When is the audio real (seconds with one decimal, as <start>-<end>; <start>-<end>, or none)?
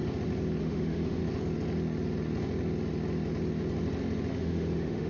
0.0-0.6; 1.2-4.3